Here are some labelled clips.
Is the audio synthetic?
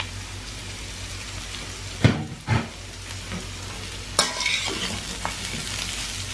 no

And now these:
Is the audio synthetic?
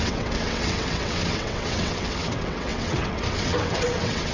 yes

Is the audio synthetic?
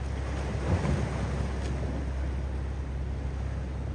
no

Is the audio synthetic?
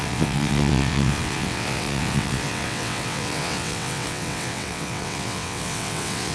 yes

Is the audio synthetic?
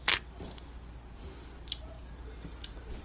no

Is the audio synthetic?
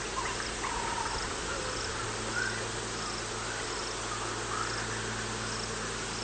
no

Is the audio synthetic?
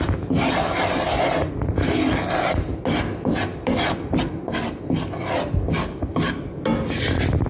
no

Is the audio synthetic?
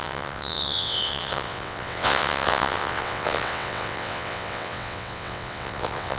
yes